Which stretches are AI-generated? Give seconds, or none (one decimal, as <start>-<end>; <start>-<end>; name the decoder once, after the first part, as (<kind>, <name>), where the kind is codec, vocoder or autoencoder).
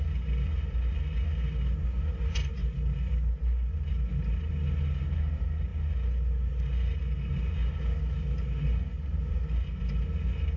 none